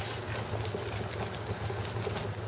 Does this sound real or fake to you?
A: real